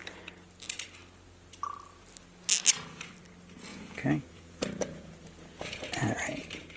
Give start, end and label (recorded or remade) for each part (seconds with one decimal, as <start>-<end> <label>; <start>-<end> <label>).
0.0-3.7 recorded; 3.7-5.8 remade; 5.8-6.8 recorded